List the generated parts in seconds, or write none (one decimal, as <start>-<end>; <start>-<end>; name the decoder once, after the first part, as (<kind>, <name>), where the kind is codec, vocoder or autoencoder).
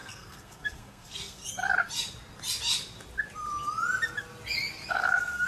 0.0-1.6 (codec, SNAC); 4.9-5.5